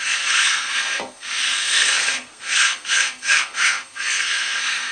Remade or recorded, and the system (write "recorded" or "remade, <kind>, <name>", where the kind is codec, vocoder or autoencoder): remade, codec, SNAC